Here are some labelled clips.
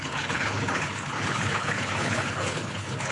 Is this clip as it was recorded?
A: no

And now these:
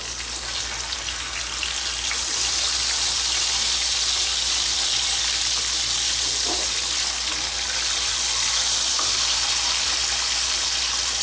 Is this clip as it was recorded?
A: yes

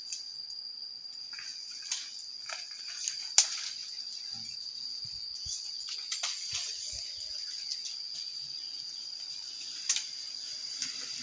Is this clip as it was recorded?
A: yes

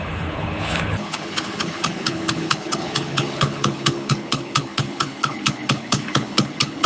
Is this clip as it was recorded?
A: no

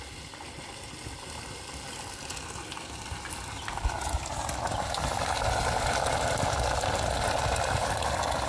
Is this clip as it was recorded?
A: yes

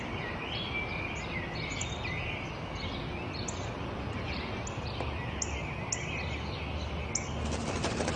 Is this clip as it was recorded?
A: yes